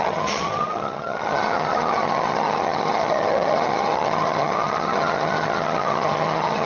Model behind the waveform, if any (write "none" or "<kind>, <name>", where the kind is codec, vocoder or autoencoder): vocoder, HiFi-GAN